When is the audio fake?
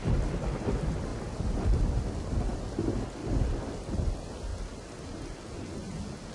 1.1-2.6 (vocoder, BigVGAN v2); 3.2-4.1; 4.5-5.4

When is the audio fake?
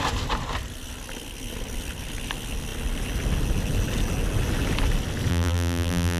5.3-6.2 (vocoder, BigVGAN v2)